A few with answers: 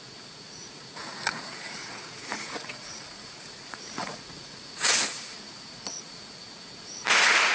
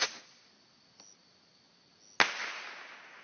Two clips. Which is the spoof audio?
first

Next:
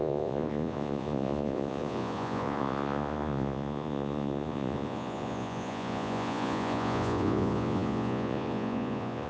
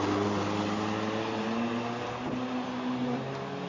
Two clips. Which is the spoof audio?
first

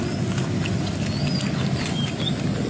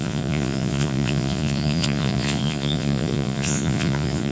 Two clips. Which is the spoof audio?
second